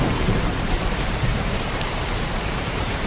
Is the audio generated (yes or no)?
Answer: yes